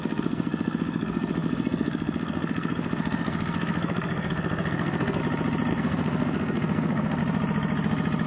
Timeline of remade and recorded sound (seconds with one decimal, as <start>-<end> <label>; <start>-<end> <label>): 0.0-5.2 remade; 5.2-5.7 recorded; 5.7-7.2 remade; 7.2-8.3 recorded